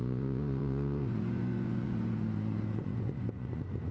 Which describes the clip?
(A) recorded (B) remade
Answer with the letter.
B